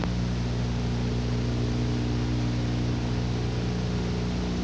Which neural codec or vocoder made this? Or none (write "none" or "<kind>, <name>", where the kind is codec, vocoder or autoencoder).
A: none